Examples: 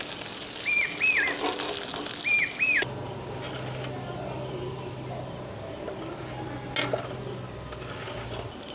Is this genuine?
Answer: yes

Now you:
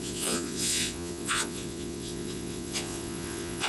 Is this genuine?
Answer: no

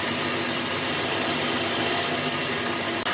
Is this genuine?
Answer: yes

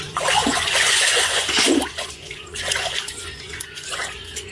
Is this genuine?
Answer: no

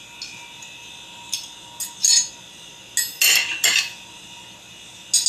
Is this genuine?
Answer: yes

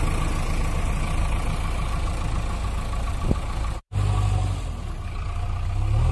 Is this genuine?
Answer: yes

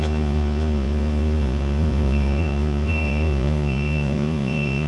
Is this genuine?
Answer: no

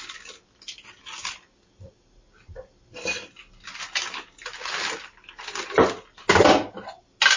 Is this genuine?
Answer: yes